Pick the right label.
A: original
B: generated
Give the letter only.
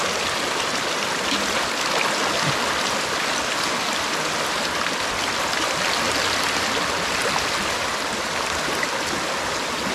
A